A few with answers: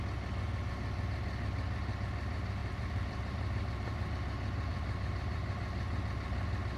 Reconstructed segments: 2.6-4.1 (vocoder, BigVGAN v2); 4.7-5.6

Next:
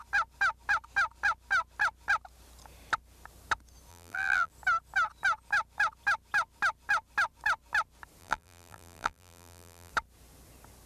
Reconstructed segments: 3.9-4.5 (vocoder, BigVGAN v2); 8.2-9.9